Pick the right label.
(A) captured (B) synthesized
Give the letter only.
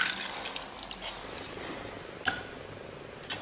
A